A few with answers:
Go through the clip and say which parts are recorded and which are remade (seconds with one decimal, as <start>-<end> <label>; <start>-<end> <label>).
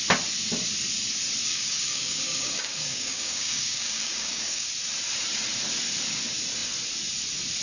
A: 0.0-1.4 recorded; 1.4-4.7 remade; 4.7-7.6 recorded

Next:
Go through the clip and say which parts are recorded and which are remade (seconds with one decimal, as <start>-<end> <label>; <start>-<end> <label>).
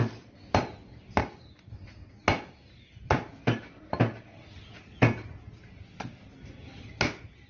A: 0.0-1.2 recorded; 1.2-1.7 remade; 1.7-7.5 recorded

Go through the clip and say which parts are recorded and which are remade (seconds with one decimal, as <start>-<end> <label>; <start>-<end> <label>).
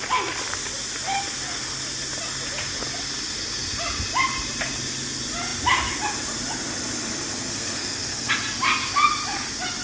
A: 0.0-7.5 recorded; 7.5-8.3 remade; 8.3-9.8 recorded